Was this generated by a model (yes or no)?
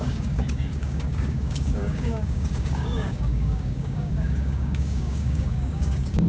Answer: yes